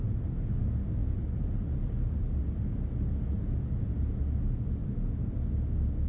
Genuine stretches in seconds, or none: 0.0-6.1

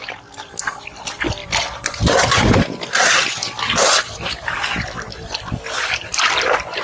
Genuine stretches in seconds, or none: 0.0-6.8

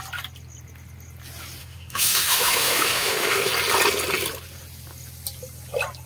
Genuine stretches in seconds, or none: 0.0-1.6; 3.5-6.1

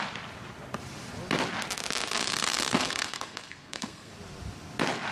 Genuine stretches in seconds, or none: 0.0-2.2; 4.1-5.1